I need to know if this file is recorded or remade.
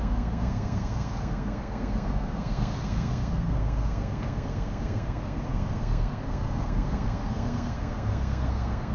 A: remade